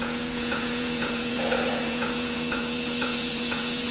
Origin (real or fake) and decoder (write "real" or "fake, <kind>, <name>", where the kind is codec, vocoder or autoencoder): fake, vocoder, Vocos